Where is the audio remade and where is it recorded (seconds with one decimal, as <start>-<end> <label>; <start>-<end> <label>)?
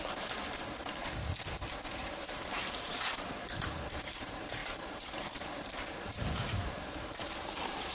0.0-1.0 remade; 1.0-2.0 recorded; 2.0-7.9 remade